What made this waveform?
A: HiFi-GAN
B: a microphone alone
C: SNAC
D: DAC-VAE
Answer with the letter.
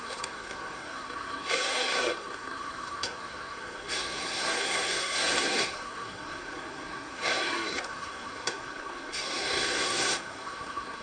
C